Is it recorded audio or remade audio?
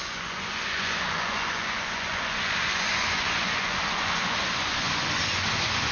remade